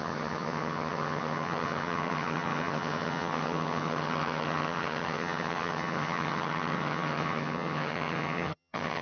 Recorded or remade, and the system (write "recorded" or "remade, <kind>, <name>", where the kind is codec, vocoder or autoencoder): remade, vocoder, HiFi-GAN